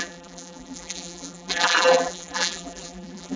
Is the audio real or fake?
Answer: fake